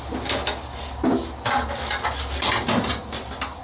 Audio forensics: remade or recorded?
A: recorded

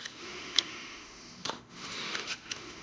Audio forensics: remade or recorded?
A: remade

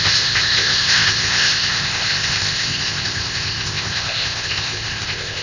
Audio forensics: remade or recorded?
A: remade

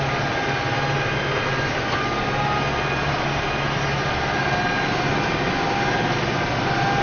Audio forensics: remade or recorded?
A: recorded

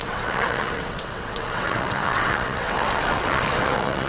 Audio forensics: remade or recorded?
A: remade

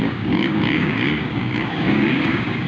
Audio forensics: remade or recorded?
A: remade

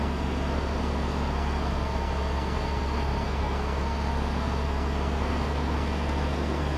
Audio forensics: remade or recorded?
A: remade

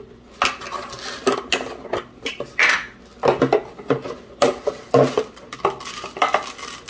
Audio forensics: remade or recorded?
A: recorded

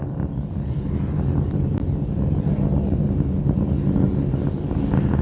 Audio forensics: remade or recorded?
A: recorded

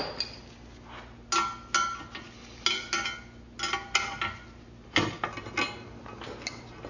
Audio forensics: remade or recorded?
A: recorded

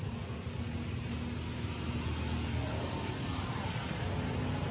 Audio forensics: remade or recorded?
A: recorded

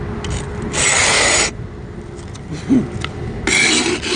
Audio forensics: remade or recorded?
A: recorded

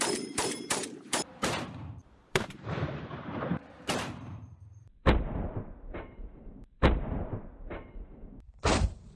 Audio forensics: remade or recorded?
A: remade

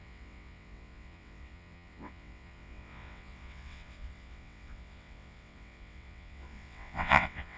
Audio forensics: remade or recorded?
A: remade